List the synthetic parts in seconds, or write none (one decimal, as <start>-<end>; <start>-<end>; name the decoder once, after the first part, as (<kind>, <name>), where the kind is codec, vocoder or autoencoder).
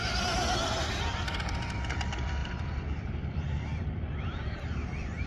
2.4-5.3 (vocoder, BigVGAN v2)